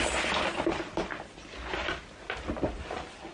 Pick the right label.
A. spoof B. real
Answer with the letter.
B